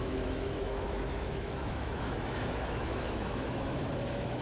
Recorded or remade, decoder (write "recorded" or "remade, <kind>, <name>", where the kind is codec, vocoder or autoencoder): remade, autoencoder, DAC-VAE